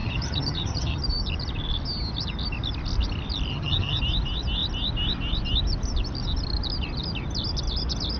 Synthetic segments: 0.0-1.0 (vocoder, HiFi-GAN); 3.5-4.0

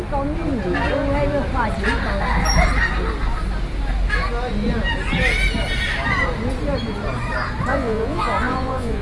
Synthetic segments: 7.7-9.0 (vocoder, Vocos)

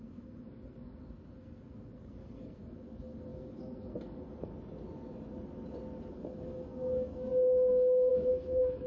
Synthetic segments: 0.0-4.5 (codec, SNAC); 6.1-8.9

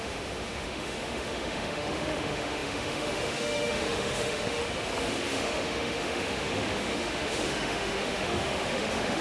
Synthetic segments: 0.0-4.6 (autoencoder, DAC-VAE); 5.3-9.2

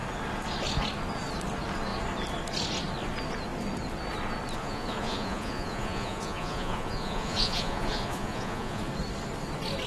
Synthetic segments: 4.6-8.9 (vocoder, Vocos)